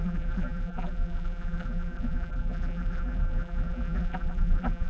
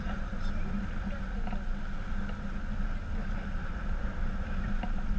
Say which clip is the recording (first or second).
second